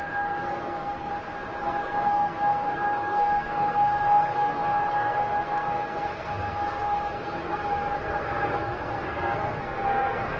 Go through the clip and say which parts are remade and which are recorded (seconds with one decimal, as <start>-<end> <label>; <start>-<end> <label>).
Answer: 0.0-1.1 remade; 1.1-1.6 recorded; 1.6-10.4 remade